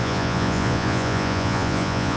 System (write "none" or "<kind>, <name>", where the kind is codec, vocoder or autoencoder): vocoder, Vocos